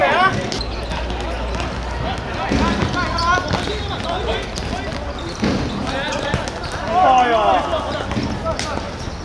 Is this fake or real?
real